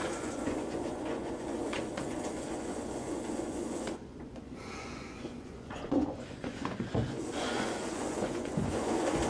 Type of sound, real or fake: fake